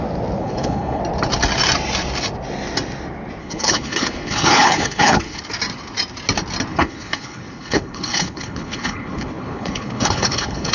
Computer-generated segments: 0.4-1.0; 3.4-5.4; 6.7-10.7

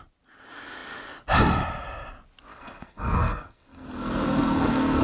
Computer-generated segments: 2.5-5.0

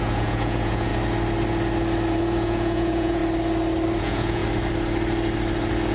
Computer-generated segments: 0.0-0.9; 2.2-3.2; 4.0-4.4

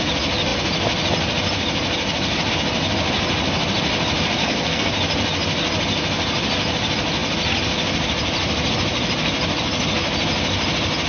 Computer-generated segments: 4.4-4.9

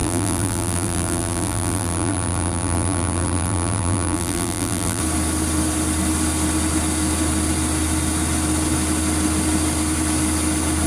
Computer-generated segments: 0.0-5.0

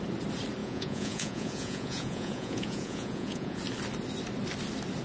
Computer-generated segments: 0.6-3.6

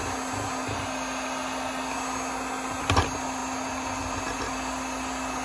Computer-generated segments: none

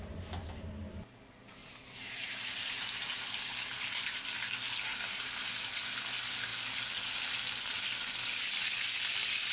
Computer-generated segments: 1.6-4.4; 4.9-5.5